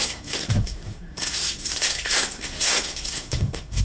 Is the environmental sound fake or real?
fake